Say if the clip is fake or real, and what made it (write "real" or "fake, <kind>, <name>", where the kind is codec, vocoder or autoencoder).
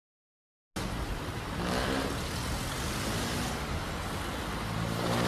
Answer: real